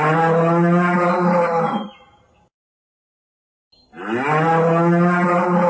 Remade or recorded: recorded